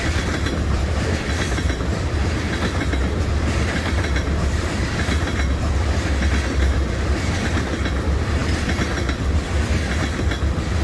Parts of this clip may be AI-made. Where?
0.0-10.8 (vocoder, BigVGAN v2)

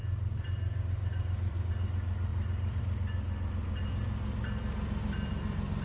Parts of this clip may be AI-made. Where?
0.0-1.7 (vocoder, BigVGAN v2); 2.3-2.8

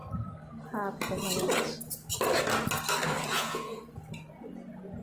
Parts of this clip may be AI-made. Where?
3.3-3.8 (vocoder, Vocos)

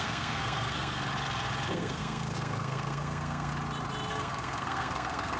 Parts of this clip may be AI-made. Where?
0.0-1.0 (codec, SNAC); 1.7-3.5; 4.1-5.4

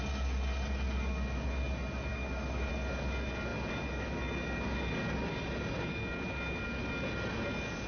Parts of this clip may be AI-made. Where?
2.1-2.7 (autoencoder, DAC-VAE)